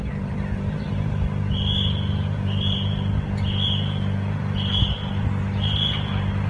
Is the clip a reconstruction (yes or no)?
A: no